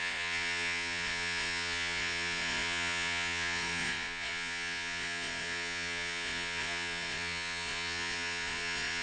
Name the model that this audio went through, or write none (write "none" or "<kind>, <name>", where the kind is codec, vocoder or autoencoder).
vocoder, Vocos